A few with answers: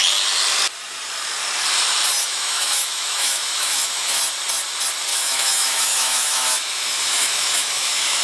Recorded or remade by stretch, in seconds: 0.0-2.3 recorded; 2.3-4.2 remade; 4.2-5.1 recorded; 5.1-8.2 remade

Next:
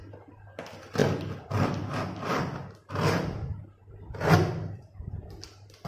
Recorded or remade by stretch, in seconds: 0.0-5.9 recorded